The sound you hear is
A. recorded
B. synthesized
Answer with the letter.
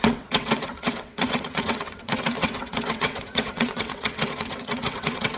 B